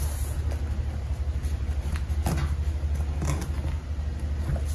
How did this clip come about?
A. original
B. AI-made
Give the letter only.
A